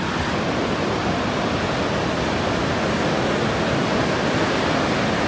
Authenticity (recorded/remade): recorded